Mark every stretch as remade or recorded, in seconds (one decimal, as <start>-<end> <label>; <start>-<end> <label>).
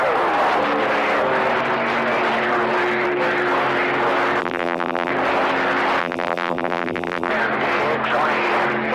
0.0-4.4 recorded; 4.4-5.1 remade; 5.1-6.0 recorded; 6.0-7.3 remade; 7.3-8.9 recorded